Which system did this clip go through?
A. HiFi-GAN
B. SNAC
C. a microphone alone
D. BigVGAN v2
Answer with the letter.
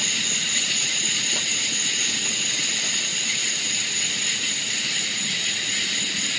C